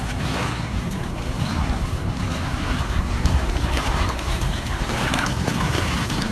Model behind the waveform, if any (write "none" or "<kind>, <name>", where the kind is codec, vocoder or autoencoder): codec, SNAC